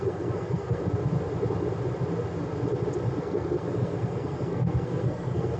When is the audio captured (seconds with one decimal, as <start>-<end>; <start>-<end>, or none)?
0.8-3.2